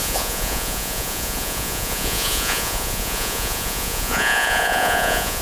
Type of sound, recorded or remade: remade